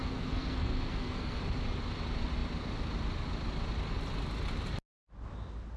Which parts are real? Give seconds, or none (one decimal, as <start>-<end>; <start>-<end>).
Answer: 1.4-5.8